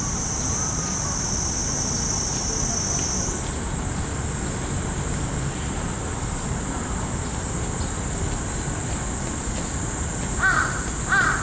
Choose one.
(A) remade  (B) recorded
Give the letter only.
B